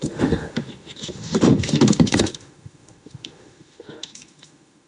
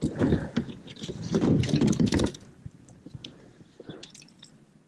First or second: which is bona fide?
second